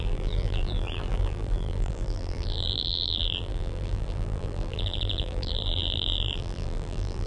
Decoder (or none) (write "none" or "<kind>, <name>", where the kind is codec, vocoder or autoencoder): vocoder, BigVGAN v2